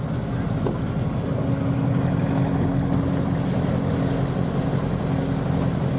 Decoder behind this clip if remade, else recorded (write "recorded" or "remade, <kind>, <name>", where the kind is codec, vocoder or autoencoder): recorded